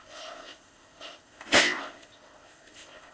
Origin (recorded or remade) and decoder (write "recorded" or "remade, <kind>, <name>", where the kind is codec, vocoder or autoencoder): remade, codec, ZipCodec